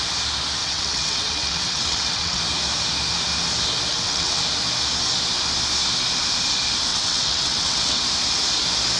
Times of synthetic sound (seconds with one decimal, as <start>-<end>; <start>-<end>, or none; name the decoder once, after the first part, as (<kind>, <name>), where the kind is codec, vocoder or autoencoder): 0.6-2.4 (vocoder, WaveNeXt); 3.9-4.4; 6.9-8.0